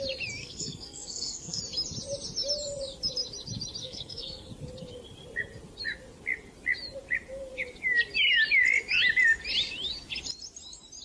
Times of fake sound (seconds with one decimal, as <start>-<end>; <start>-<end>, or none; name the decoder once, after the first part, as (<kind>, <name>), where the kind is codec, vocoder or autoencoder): 0.4-1.6 (codec, SNAC); 3.8-4.5